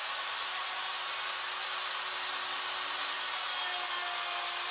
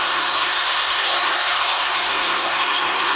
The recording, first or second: first